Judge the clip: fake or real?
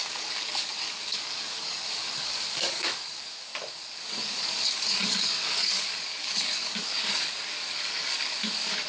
fake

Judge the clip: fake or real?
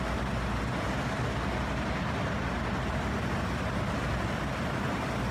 real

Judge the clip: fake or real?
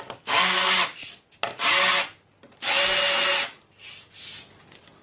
real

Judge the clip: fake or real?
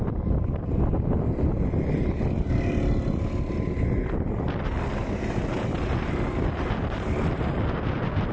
real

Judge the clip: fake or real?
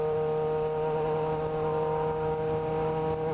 real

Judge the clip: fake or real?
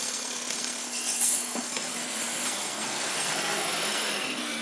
fake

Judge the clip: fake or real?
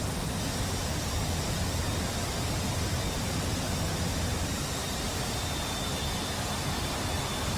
real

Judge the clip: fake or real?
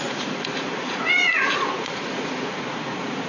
fake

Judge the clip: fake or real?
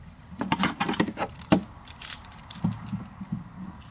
real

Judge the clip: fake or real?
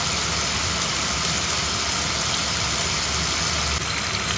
real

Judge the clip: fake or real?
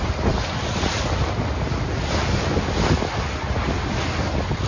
real